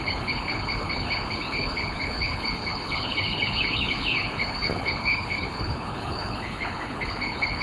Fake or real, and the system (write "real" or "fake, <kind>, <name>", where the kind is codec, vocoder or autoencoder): fake, codec, HILCodec